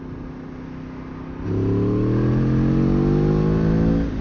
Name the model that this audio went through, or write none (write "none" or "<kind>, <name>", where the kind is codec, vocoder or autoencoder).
none